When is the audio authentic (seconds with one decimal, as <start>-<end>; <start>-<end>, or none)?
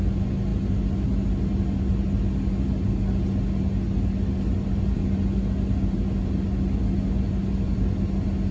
0.0-8.5